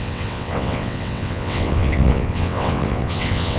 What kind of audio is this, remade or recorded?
remade